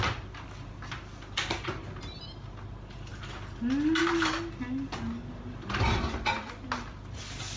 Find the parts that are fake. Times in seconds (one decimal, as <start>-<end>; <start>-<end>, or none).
none